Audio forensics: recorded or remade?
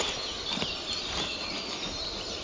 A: recorded